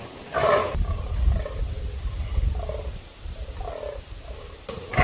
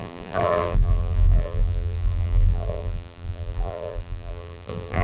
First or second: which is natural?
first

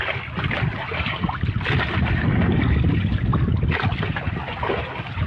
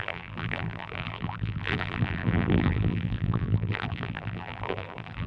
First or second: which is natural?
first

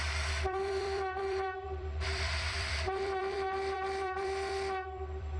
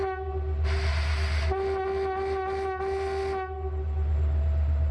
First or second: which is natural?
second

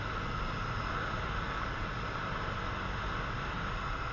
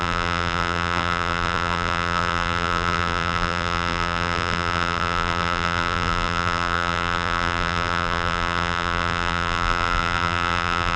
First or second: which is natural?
first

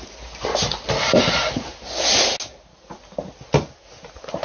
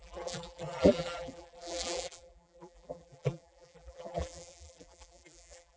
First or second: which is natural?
first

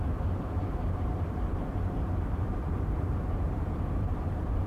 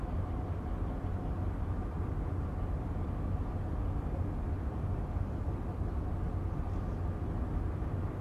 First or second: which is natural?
second